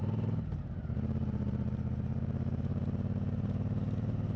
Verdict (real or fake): fake